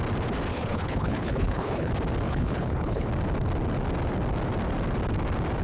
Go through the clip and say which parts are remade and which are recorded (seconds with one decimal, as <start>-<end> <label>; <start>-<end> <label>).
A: 0.0-0.5 recorded; 0.5-1.9 remade; 1.9-2.3 recorded; 2.3-3.1 remade; 3.1-5.6 recorded